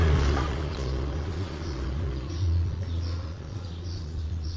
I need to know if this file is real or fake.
fake